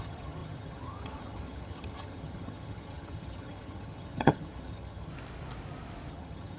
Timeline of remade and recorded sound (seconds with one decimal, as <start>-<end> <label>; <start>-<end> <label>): 0.0-5.1 remade; 5.1-6.1 recorded; 6.1-6.6 remade